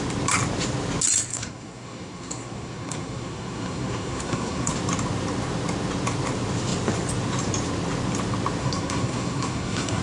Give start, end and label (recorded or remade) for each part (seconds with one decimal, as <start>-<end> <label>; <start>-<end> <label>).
0.0-1.3 recorded; 1.3-4.7 remade; 4.7-8.6 recorded; 8.6-10.0 remade